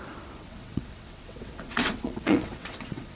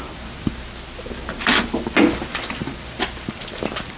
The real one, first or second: second